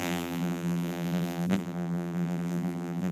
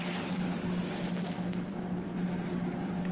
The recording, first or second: second